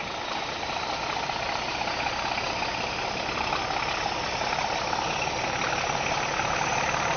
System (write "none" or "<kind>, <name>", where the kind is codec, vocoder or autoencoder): none